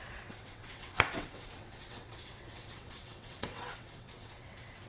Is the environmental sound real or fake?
fake